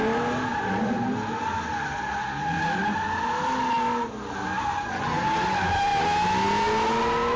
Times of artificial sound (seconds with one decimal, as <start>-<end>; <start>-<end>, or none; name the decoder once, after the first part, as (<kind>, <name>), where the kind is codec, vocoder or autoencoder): 4.7-5.3 (vocoder, Vocos)